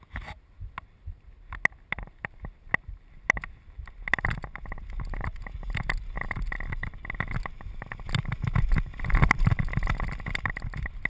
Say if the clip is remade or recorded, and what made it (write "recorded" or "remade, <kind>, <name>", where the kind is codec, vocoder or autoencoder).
recorded